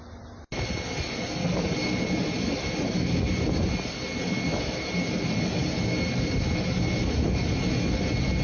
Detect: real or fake real